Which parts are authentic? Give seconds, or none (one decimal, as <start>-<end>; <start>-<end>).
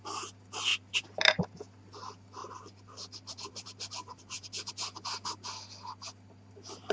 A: 0.0-0.7; 1.6-2.4; 4.7-6.9